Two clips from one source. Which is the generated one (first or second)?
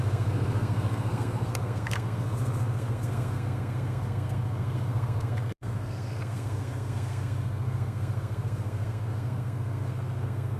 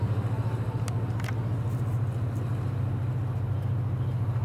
first